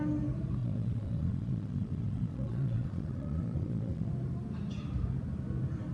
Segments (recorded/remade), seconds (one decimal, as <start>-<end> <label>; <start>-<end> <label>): 0.0-0.6 recorded; 0.6-4.1 remade; 4.1-5.9 recorded